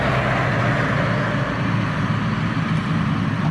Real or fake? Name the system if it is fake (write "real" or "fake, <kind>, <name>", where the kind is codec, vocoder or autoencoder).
real